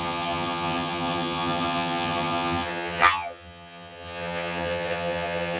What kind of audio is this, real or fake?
fake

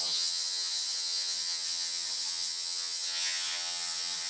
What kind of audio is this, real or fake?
fake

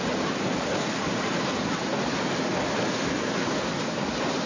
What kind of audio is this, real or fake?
real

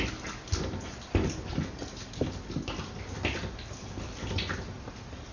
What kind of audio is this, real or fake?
real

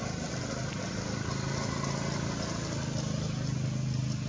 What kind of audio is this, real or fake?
real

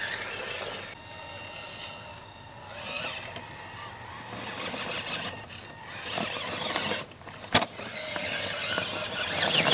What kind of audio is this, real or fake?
real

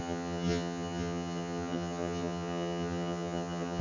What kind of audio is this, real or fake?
fake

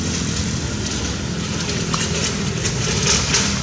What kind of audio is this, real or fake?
real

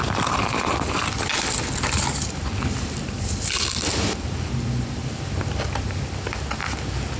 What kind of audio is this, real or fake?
real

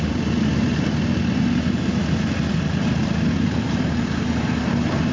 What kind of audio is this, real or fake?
real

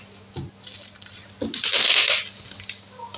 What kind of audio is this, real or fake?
real